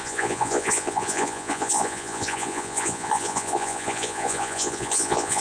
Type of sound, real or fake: fake